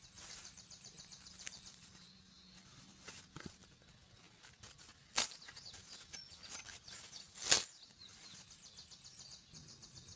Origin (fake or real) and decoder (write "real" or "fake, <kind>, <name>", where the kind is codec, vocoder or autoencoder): real